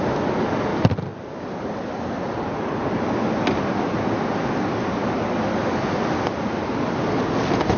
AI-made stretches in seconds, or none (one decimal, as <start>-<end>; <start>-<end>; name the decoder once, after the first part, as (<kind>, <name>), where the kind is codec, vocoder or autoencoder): none